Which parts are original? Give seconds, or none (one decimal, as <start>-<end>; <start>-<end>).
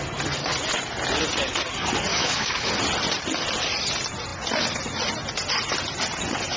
0.0-2.1; 2.7-6.6